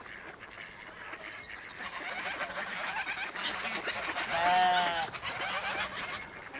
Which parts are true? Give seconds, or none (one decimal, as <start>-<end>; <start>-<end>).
0.0-6.6